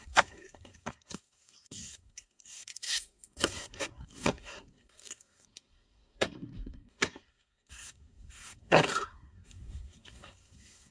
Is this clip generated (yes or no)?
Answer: yes